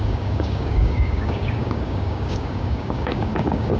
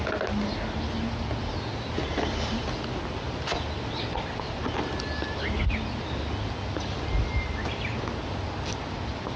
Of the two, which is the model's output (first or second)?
first